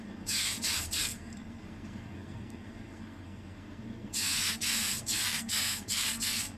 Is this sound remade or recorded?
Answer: remade